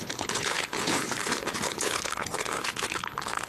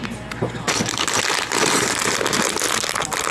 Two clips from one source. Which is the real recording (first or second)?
second